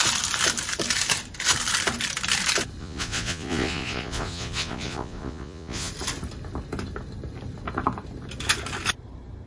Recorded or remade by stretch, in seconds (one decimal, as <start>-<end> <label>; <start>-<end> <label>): 0.0-2.8 recorded; 2.8-5.9 remade; 5.9-9.5 recorded